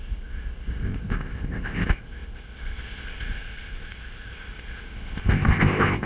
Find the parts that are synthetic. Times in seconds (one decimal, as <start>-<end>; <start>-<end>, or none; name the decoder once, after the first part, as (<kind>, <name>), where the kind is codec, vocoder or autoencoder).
0.0-6.1 (codec, ZipCodec)